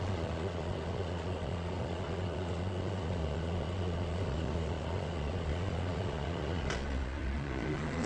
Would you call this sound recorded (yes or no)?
no